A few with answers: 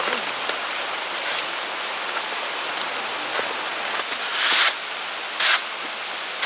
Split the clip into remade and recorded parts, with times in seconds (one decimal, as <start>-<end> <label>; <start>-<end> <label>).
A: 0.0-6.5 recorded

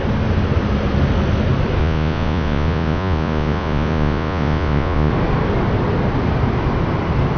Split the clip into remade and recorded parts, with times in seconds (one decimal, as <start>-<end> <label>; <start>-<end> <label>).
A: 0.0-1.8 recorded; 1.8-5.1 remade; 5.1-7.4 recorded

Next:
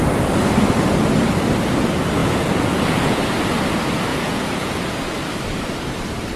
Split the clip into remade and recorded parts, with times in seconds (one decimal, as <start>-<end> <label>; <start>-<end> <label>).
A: 0.0-2.2 recorded; 2.2-3.2 remade; 3.2-4.1 recorded; 4.1-4.7 remade; 4.7-6.4 recorded

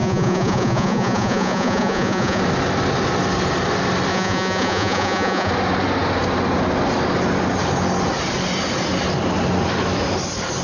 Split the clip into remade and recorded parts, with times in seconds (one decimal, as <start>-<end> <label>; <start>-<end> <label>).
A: 0.0-2.4 remade; 2.4-4.1 recorded; 4.1-5.5 remade; 5.5-10.6 recorded